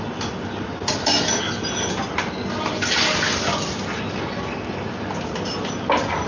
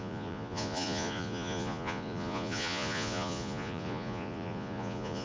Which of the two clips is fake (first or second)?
second